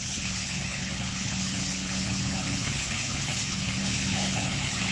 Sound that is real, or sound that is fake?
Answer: fake